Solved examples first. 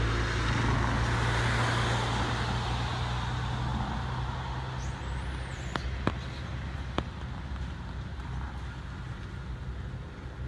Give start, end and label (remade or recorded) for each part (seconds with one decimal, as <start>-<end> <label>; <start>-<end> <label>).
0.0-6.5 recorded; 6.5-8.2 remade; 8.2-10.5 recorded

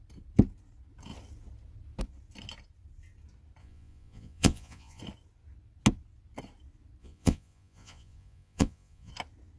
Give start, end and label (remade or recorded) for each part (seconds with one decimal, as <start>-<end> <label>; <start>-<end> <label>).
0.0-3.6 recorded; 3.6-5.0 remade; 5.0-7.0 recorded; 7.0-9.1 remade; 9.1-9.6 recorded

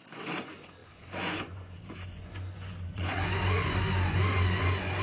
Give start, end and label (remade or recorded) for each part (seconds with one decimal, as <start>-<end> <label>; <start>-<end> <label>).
0.0-5.0 remade

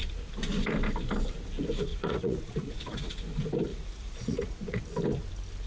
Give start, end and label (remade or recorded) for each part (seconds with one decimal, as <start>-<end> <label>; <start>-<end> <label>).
0.0-1.9 recorded; 1.9-3.1 remade; 3.1-3.7 recorded; 3.7-4.8 remade; 4.8-5.7 recorded

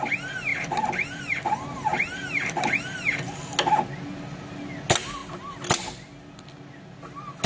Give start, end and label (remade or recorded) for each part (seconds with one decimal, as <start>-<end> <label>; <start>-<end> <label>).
0.0-7.5 recorded

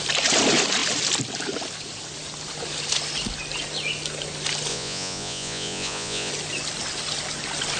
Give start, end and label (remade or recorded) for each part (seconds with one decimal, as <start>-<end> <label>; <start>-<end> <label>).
0.0-4.7 recorded; 4.7-6.3 remade; 6.3-7.8 recorded

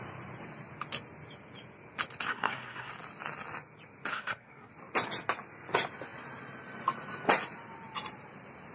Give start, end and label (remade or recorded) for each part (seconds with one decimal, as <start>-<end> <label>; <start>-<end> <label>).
0.0-2.3 recorded; 2.3-2.9 remade; 2.9-4.1 recorded; 4.1-4.7 remade; 4.7-8.7 recorded

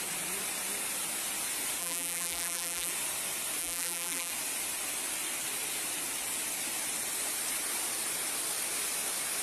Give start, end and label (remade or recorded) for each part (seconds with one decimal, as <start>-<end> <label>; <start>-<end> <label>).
0.0-1.8 recorded; 1.8-2.9 remade; 2.9-3.6 recorded; 3.6-4.3 remade; 4.3-9.4 recorded